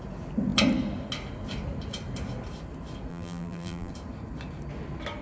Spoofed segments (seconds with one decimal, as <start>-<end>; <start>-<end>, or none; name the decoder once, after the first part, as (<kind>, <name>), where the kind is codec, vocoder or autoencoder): 3.1-3.9 (vocoder, BigVGAN v2)